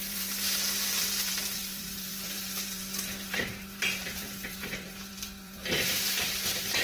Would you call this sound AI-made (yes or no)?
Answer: yes